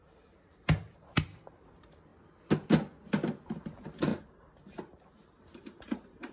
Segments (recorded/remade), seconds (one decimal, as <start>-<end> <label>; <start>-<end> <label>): 0.0-2.1 remade; 2.1-3.5 recorded; 3.5-6.3 remade